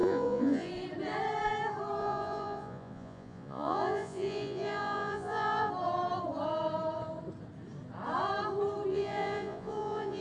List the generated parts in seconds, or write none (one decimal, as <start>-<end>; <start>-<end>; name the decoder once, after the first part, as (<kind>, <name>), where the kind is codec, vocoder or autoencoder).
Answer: 0.0-0.7 (vocoder, Vocos); 2.0-5.7; 8.9-10.2